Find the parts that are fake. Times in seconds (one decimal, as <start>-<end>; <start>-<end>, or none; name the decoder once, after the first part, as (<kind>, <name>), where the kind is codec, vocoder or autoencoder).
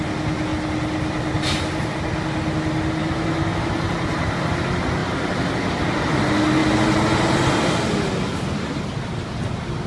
3.0-3.7 (autoencoder, DAC-VAE)